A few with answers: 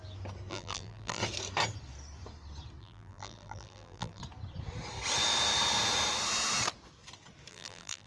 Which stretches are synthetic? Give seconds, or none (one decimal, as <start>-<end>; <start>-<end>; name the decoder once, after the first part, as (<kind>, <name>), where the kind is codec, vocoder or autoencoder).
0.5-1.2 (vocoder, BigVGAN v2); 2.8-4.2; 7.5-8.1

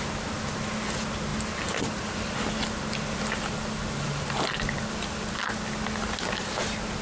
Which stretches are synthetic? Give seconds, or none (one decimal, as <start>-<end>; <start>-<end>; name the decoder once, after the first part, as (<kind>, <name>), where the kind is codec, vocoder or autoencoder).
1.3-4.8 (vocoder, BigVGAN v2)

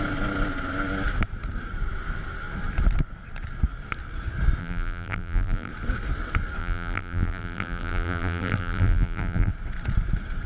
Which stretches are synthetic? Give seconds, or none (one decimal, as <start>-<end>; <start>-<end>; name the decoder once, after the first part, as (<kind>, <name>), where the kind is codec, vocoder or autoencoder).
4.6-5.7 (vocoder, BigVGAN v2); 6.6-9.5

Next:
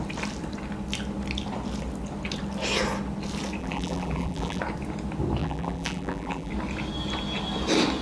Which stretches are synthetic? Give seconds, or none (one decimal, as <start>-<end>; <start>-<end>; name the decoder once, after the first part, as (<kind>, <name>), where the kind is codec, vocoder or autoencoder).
3.6-4.6 (vocoder, BigVGAN v2); 5.4-6.5

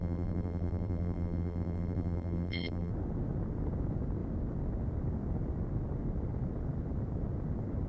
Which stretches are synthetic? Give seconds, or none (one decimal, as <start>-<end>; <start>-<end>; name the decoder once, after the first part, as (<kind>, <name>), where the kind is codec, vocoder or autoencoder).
0.0-2.9 (vocoder, BigVGAN v2)